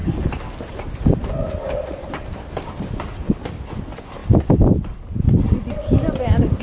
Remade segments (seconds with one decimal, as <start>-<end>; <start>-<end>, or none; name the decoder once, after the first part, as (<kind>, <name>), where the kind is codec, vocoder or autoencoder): none